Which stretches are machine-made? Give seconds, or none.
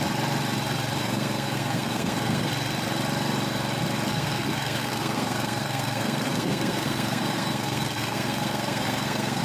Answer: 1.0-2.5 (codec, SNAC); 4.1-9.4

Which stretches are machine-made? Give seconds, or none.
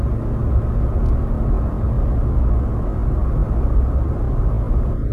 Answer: none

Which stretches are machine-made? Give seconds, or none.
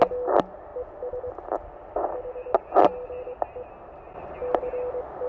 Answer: none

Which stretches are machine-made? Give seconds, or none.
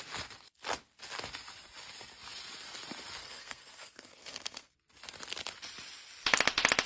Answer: 3.2-4.7 (codec, SNAC)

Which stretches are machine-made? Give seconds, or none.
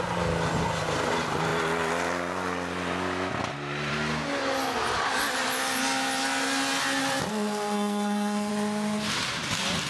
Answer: 7.3-8.5 (codec, SNAC)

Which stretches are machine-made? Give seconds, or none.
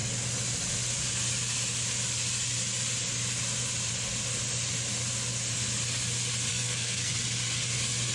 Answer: 6.5-7.1 (codec, SNAC)